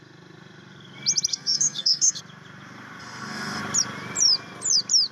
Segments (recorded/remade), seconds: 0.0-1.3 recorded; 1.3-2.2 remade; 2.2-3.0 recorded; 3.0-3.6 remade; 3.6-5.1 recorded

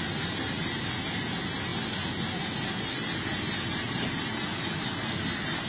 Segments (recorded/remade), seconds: 0.0-5.7 recorded

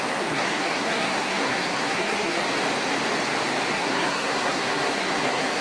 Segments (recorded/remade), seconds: 0.0-2.4 remade; 2.4-3.7 recorded; 3.7-5.6 remade